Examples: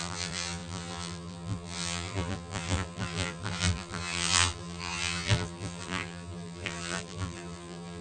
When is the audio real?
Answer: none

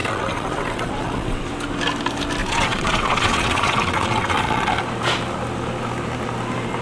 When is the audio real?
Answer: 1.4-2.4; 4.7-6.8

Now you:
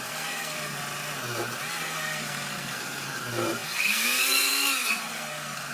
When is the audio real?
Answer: 0.8-1.8